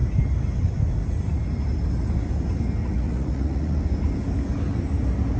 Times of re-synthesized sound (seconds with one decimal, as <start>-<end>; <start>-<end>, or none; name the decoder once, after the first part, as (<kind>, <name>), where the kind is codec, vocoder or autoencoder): 2.8-3.8 (vocoder, Vocos)